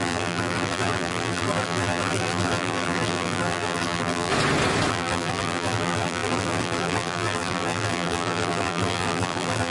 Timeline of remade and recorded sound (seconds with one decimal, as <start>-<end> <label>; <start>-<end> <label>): 0.0-4.3 remade; 4.3-4.9 recorded; 4.9-9.7 remade